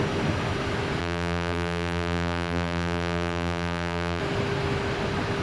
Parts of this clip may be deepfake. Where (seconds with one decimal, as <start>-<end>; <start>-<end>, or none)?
1.0-4.2